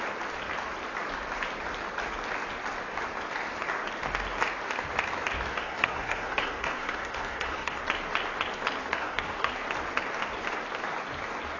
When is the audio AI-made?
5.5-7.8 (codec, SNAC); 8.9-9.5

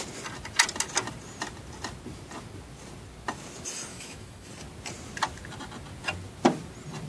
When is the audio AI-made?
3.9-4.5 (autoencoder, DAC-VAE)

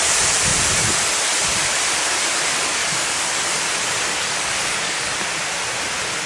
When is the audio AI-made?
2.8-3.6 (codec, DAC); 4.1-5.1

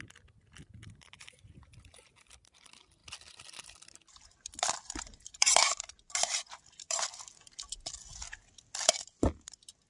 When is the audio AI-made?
3.0-7.0 (vocoder, BigVGAN v2)